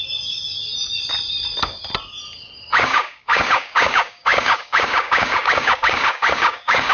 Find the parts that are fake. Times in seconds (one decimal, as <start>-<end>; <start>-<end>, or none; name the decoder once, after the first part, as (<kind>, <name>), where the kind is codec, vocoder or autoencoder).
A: 2.7-6.9 (codec, DAC)